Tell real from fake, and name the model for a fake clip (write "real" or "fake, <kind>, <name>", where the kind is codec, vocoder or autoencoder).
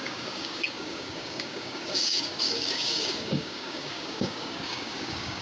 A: fake, codec, DAC